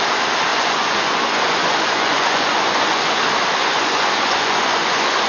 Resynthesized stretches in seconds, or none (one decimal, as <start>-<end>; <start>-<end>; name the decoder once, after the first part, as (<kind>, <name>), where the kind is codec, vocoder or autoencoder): 0.5-3.2 (vocoder, Vocos); 3.6-5.3